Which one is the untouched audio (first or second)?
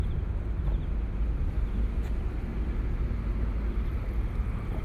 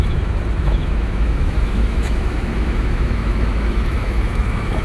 first